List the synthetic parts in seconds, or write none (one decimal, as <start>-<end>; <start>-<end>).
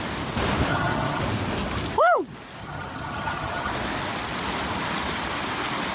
0.7-1.2; 2.6-3.7